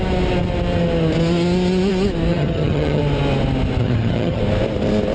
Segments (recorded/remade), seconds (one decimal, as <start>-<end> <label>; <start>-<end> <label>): 0.0-2.3 recorded; 2.3-3.0 remade; 3.0-3.8 recorded; 3.8-4.4 remade; 4.4-5.1 recorded